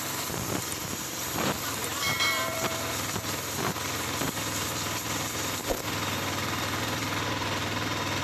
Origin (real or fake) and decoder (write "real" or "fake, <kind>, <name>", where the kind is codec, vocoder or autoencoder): fake, vocoder, BigVGAN v2